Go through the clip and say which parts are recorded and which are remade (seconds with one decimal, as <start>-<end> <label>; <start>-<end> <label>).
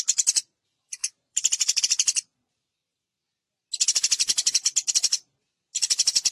0.0-1.0 recorded; 1.0-1.8 remade; 1.8-6.3 recorded